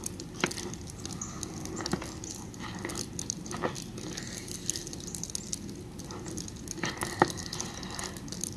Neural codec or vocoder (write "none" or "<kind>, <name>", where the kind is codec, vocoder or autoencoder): none